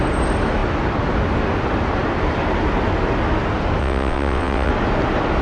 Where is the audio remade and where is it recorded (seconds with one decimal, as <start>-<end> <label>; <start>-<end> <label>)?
0.0-3.8 recorded; 3.8-4.7 remade; 4.7-5.4 recorded